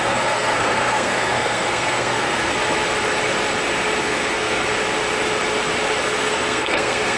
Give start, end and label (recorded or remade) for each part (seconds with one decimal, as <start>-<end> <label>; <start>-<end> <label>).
0.0-2.5 remade; 2.5-4.0 recorded; 4.0-4.6 remade; 4.6-6.0 recorded; 6.0-7.2 remade